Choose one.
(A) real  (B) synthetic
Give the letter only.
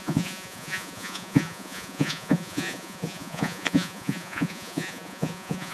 B